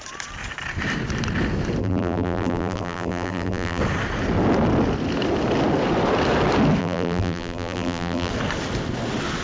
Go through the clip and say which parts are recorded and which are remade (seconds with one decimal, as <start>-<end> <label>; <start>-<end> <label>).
0.0-1.8 recorded; 1.8-3.8 remade; 3.8-6.8 recorded; 6.8-8.3 remade; 8.3-9.4 recorded